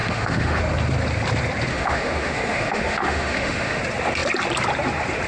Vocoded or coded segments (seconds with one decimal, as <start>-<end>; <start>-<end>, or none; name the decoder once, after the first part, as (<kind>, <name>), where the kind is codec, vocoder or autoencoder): 0.0-0.6 (autoencoder, DAC-VAE); 1.7-3.8